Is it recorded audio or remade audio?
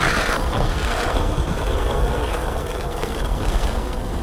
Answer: remade